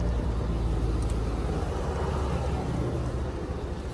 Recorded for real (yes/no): yes